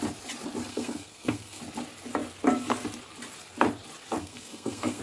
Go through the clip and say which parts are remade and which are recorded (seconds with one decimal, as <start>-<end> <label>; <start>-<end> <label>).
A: 0.0-0.7 recorded; 0.7-1.6 remade; 1.6-4.2 recorded; 4.2-5.0 remade